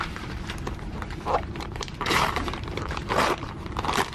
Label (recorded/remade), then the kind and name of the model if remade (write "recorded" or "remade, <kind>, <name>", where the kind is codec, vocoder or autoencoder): remade, vocoder, BigVGAN v2